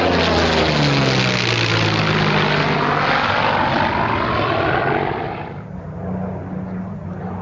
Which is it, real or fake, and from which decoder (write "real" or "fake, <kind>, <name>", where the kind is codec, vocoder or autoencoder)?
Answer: real